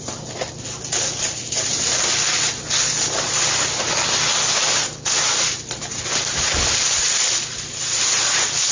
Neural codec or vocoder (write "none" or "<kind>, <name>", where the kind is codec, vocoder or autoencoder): none